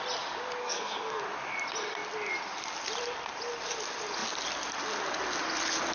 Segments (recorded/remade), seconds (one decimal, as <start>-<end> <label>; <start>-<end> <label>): 0.0-0.6 recorded; 0.6-1.2 remade; 1.2-5.9 recorded